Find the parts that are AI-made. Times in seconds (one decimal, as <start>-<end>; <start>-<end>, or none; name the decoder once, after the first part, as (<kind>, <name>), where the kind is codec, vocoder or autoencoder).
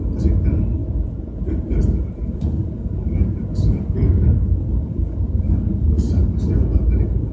2.2-6.5 (codec, DAC)